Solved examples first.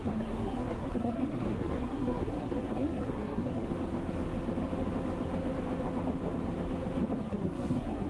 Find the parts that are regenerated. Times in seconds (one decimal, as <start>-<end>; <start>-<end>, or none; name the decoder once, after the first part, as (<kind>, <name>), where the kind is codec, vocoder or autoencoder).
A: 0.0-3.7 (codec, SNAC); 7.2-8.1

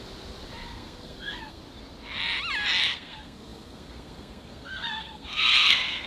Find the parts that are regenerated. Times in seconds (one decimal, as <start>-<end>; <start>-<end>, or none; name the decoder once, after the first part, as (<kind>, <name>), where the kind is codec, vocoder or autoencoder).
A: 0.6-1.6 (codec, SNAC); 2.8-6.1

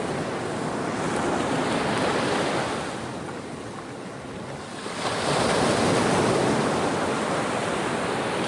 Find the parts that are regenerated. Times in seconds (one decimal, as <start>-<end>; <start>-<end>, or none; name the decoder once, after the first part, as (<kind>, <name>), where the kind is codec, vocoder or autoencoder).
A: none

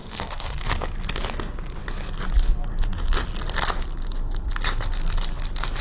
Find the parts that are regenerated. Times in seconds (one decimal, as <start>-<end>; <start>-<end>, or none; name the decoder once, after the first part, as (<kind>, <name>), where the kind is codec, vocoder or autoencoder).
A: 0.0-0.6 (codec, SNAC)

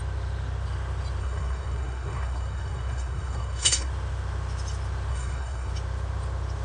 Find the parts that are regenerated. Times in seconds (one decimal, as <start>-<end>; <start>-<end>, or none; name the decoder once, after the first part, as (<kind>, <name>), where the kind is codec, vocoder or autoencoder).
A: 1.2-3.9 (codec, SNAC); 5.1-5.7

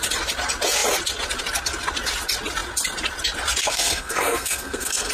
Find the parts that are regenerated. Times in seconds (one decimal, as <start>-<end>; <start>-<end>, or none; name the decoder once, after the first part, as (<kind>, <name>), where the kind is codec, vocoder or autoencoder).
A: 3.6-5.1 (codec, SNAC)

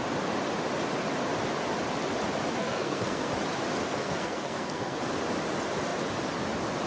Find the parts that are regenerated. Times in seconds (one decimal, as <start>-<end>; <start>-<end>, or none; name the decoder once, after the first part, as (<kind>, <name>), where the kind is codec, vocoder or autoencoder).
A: 2.6-3.3 (codec, SNAC); 3.8-5.0

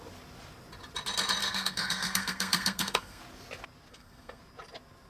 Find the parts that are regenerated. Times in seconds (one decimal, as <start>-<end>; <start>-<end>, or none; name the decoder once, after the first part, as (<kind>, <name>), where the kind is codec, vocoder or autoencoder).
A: 1.4-3.2 (codec, SNAC); 3.9-4.4